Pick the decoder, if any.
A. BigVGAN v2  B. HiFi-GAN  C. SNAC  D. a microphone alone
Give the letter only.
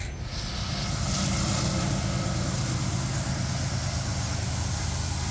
D